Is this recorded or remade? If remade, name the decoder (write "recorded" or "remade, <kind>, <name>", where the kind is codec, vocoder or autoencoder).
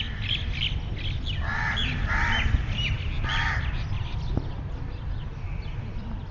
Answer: recorded